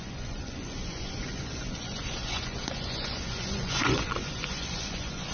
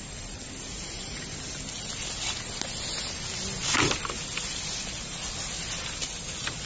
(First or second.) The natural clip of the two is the second